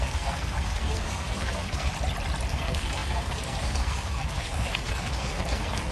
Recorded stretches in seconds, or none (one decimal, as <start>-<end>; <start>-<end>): 1.9-2.5